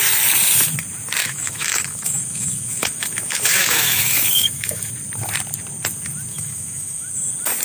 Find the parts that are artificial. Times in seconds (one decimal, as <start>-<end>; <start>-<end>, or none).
1.2-4.9; 6.3-7.1